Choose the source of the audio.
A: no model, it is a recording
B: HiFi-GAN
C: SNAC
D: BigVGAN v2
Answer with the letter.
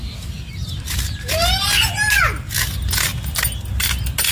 A